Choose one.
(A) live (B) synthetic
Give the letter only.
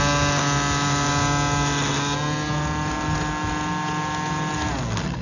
A